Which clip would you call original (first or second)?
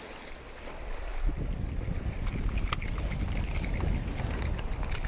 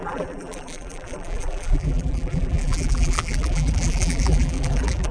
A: first